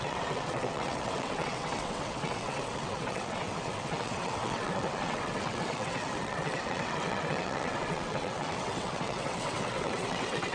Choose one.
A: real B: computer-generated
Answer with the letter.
B